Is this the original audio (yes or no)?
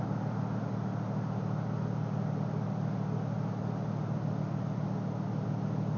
yes